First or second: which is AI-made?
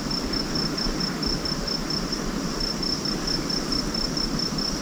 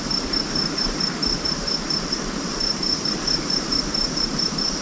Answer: second